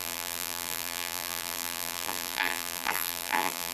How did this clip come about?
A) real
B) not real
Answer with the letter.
B